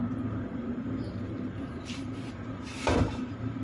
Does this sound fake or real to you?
fake